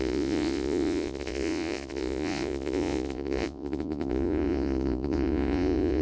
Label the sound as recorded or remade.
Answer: remade